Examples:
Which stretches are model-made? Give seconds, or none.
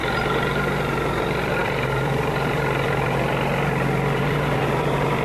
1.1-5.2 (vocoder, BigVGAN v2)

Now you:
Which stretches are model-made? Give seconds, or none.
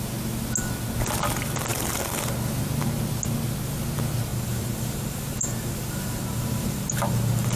4.3-7.6 (vocoder, BigVGAN v2)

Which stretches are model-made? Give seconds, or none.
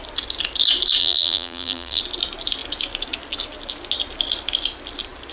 1.0-2.0 (vocoder, BigVGAN v2)